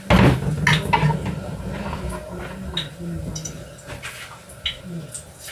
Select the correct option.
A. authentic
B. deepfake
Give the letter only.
A